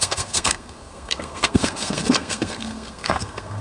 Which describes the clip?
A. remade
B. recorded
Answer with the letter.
A